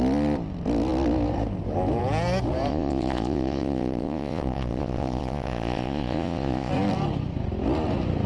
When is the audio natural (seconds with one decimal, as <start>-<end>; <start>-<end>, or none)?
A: 0.0-2.7; 6.7-8.3